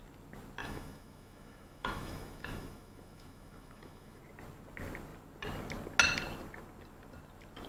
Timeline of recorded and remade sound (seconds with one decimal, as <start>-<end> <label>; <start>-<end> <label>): 0.0-0.6 recorded; 0.6-4.2 remade; 4.2-7.7 recorded